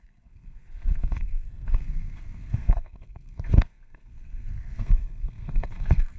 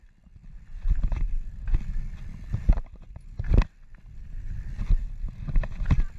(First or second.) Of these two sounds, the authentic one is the second